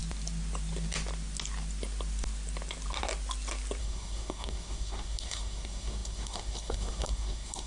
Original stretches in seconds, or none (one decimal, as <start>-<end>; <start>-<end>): 0.0-3.8